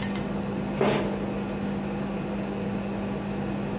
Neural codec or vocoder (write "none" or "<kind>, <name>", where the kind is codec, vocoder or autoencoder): none